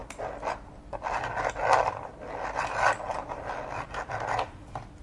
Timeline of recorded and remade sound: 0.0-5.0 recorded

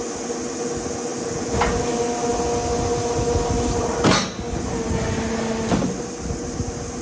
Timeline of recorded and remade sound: 0.0-7.0 recorded

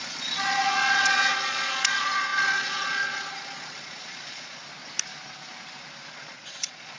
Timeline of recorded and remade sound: 0.0-4.6 remade; 4.6-6.1 recorded; 6.1-7.0 remade

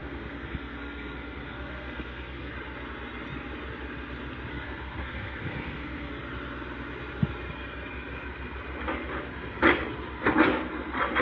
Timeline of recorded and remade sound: 0.0-2.5 remade; 2.5-4.5 recorded; 4.5-6.1 remade; 6.1-11.2 recorded